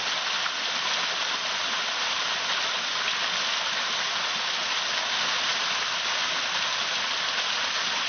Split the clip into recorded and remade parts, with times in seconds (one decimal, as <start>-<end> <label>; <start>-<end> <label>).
0.0-8.1 recorded